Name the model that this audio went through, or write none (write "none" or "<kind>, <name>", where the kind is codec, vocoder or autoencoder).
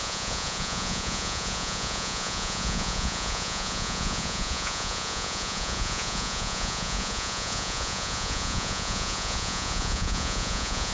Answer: vocoder, Vocos